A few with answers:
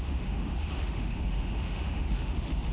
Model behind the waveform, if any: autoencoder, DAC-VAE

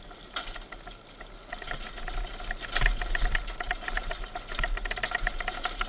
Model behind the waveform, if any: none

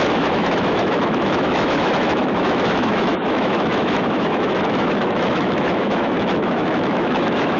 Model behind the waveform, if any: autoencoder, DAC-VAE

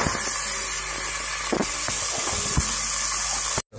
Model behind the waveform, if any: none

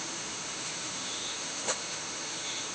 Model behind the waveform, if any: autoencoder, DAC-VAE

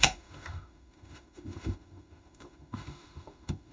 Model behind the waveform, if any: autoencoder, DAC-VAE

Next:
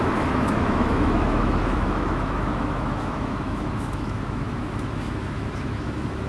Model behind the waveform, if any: autoencoder, DAC-VAE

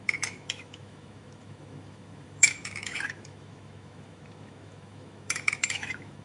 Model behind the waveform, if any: autoencoder, DAC-VAE